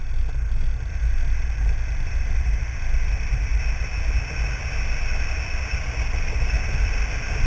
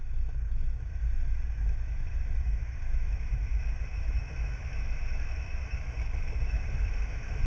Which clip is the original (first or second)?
first